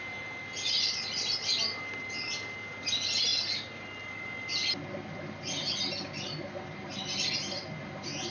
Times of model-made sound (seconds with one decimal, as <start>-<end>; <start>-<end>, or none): none